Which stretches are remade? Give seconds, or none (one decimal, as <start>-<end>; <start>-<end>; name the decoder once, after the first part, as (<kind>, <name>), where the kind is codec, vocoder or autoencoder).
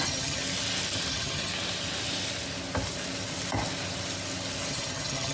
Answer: 0.0-0.4 (vocoder, HiFi-GAN); 1.1-1.5; 4.7-5.3